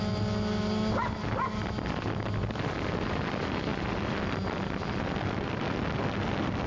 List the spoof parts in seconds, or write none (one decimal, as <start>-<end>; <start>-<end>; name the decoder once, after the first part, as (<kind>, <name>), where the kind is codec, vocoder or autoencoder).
none